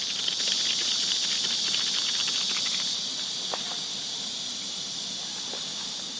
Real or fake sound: real